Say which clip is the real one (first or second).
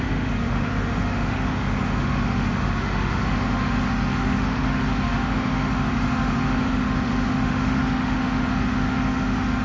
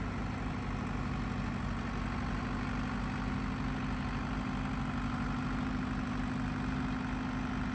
second